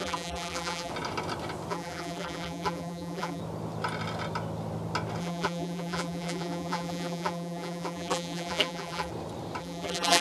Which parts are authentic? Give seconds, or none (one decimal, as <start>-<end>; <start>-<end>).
0.9-1.7; 3.4-5.2; 9.1-9.6

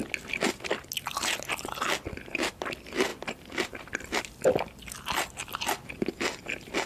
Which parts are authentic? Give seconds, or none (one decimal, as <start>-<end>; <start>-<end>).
0.0-6.9

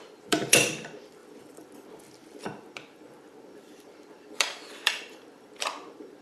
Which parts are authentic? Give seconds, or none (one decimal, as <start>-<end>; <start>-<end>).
none

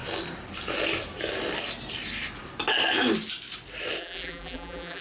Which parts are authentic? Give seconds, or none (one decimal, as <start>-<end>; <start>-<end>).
0.0-4.0

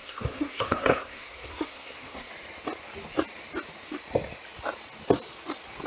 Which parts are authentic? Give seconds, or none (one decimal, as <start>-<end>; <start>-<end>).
2.3-5.9

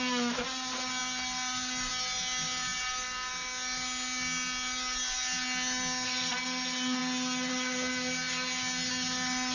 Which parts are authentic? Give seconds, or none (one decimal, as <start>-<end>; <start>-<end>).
0.0-9.5